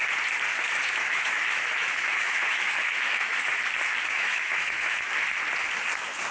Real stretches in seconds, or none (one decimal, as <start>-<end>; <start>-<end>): 0.0-0.5; 3.6-4.0; 5.1-6.3